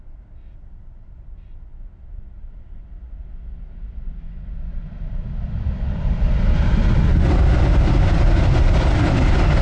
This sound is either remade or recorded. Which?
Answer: recorded